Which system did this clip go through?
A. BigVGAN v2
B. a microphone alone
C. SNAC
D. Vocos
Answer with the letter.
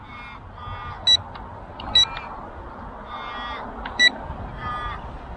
B